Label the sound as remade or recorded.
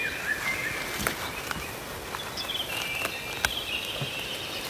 recorded